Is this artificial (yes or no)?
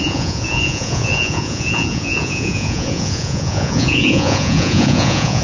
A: yes